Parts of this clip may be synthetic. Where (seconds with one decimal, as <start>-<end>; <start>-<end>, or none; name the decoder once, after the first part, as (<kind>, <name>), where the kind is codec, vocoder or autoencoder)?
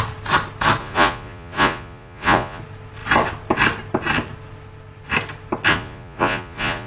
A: 0.8-2.6 (vocoder, Vocos); 5.7-6.9